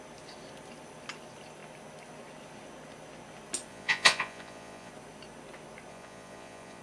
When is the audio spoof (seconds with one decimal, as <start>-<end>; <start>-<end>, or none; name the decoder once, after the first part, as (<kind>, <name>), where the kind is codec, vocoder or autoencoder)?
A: 3.7-4.9 (vocoder, Vocos); 5.9-6.8